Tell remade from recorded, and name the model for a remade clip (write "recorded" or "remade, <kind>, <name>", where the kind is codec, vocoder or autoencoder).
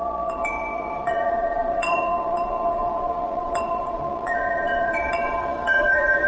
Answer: remade, vocoder, Vocos